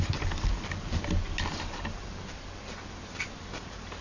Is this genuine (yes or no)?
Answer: yes